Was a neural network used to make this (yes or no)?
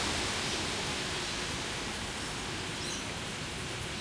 no